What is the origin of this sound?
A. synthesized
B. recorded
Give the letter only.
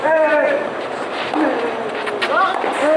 B